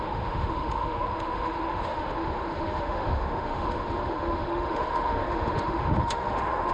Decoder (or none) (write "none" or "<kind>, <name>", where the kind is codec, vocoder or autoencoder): autoencoder, DAC-VAE